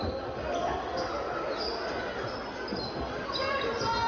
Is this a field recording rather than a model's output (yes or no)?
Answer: yes